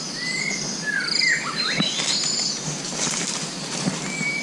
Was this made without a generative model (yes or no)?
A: yes